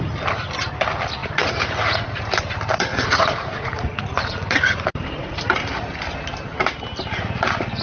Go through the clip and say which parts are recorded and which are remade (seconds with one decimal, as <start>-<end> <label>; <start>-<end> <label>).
0.0-1.2 recorded; 1.2-2.2 remade; 2.2-2.9 recorded; 2.9-5.4 remade; 5.4-7.8 recorded